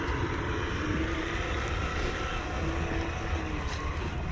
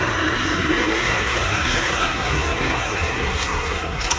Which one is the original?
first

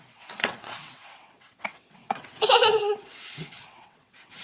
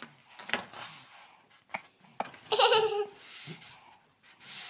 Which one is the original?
second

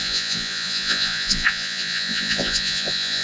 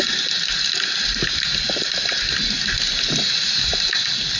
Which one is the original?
second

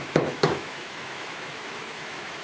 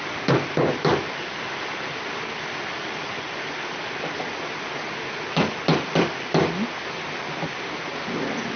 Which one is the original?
second